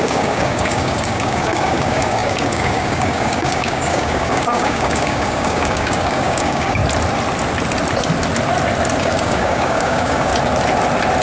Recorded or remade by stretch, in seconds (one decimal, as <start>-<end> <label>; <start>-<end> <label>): 0.0-6.8 remade; 6.8-9.0 recorded; 9.0-10.3 remade; 10.3-11.2 recorded